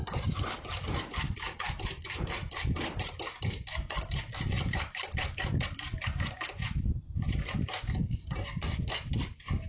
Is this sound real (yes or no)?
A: no